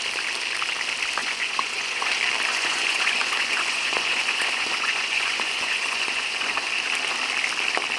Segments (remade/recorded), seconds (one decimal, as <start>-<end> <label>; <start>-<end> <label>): 0.0-1.2 recorded; 1.2-2.1 remade; 2.1-2.5 recorded; 2.5-6.7 remade; 6.7-8.0 recorded